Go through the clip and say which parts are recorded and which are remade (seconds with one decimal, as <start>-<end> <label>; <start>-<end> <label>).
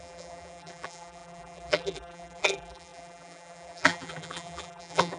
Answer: 0.0-5.2 remade